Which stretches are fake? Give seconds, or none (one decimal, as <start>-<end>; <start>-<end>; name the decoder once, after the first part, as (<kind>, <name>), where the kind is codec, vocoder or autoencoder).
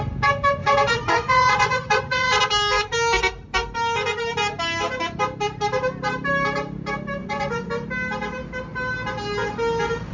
0.6-2.4 (vocoder, Vocos); 7.2-7.7